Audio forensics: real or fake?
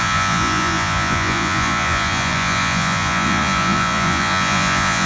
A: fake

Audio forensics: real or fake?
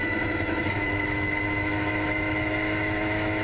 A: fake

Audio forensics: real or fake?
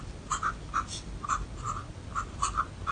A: real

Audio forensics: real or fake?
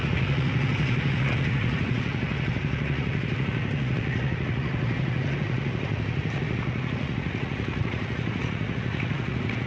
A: fake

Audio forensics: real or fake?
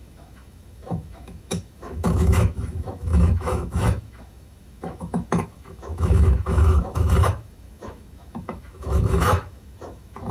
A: fake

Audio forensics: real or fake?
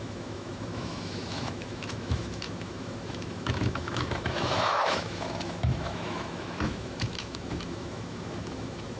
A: fake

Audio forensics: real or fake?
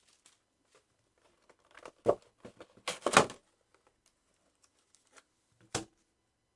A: real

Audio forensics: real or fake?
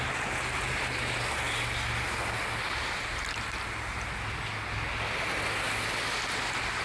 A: real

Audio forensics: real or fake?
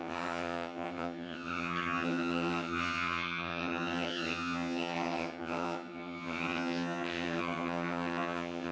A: fake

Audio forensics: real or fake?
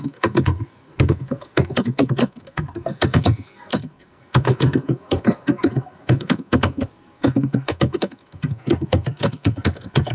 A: fake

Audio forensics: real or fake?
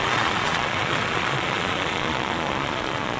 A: fake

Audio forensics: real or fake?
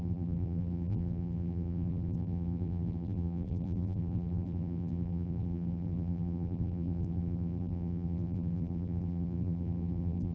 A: fake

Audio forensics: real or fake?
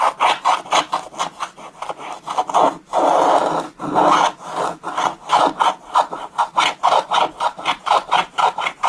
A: real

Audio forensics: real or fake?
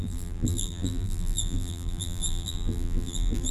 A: fake